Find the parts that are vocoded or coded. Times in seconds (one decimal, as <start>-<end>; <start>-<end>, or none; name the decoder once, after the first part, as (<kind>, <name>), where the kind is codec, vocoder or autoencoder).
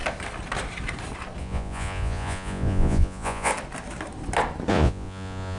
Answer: 1.4-3.5 (vocoder, Vocos); 4.7-5.6